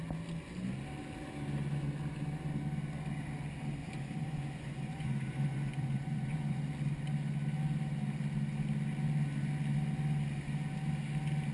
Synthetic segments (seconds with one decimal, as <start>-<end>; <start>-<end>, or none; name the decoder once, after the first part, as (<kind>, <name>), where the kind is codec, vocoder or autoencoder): 3.8-6.6 (vocoder, Vocos)